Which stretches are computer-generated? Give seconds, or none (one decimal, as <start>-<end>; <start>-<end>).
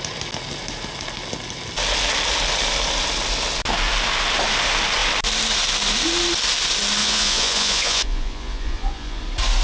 7.0-9.2